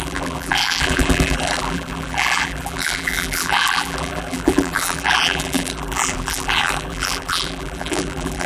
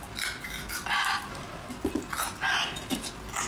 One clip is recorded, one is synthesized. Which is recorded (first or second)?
second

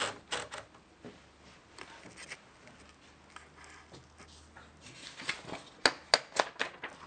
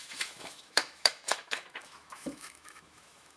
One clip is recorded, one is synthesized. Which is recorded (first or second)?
first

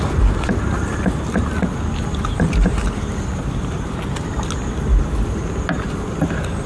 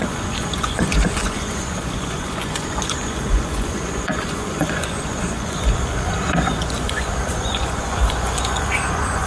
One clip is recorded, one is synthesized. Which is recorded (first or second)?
first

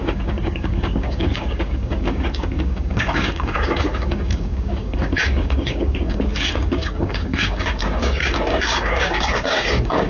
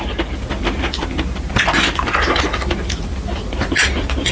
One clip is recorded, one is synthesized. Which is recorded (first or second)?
second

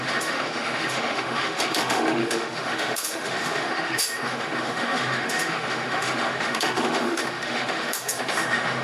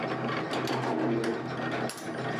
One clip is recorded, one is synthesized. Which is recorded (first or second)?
second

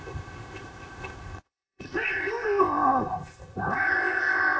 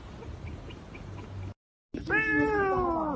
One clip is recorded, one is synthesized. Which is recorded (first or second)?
second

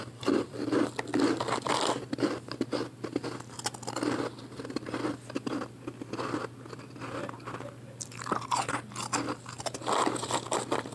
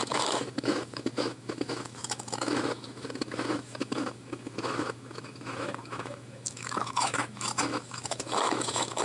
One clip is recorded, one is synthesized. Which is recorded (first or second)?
first